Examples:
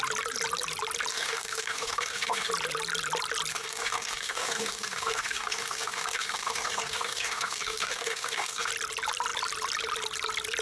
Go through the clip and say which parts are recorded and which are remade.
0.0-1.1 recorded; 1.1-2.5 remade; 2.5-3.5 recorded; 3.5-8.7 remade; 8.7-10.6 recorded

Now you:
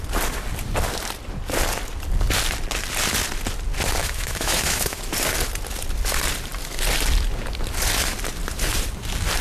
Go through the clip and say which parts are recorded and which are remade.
0.0-4.0 recorded; 4.0-5.0 remade; 5.0-9.4 recorded

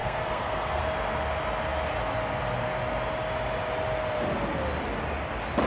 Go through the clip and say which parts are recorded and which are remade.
0.0-0.8 remade; 0.8-5.7 recorded

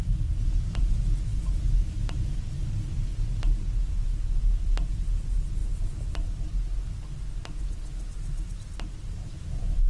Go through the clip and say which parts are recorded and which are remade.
0.0-9.9 recorded

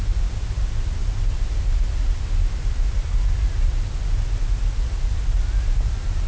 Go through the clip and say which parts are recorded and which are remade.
0.0-6.3 recorded